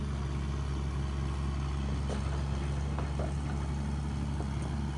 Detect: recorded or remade recorded